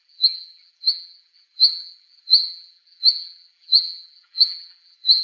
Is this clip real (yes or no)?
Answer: no